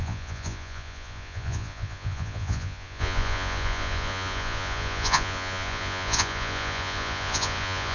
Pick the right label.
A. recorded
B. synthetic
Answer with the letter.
B